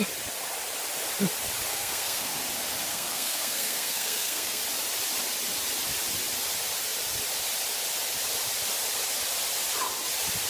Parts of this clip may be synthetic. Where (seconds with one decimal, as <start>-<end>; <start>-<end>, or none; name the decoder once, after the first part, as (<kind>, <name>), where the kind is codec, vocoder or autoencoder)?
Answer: 1.7-2.3 (codec, SNAC); 2.9-4.6

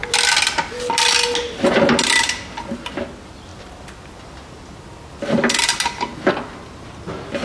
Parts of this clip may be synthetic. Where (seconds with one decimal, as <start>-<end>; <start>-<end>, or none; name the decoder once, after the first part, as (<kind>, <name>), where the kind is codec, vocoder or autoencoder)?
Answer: none